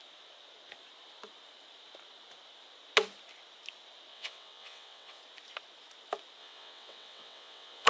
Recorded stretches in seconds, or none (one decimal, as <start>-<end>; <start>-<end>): 0.0-4.1; 5.2-6.4